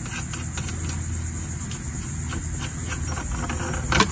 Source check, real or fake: real